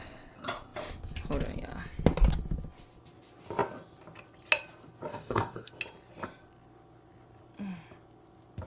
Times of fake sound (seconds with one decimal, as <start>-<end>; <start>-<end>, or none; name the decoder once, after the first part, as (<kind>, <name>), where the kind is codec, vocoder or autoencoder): 5.1-5.7 (codec, DAC)